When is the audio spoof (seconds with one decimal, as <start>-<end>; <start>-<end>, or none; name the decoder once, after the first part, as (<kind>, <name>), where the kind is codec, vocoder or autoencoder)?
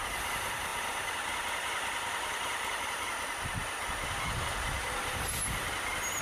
none